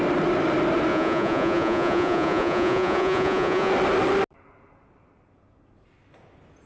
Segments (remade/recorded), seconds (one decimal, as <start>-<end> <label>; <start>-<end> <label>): 0.0-0.9 recorded; 0.9-3.7 remade; 3.7-6.7 recorded